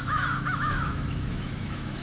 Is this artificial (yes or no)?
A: yes